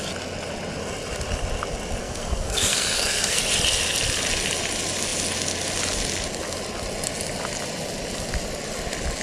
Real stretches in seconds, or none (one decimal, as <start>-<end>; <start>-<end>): 0.0-2.0; 3.4-9.2